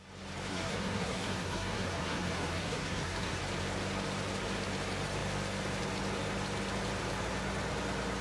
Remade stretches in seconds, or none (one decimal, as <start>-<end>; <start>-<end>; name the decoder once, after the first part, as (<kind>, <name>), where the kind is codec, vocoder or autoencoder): 0.5-3.4 (codec, SNAC)